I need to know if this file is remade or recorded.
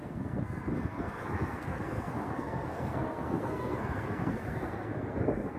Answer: remade